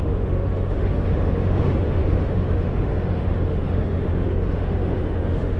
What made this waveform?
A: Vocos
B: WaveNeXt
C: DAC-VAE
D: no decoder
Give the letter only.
C